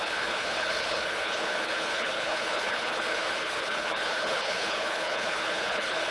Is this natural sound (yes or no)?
no